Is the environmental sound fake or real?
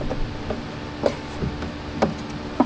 real